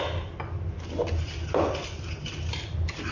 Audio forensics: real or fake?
real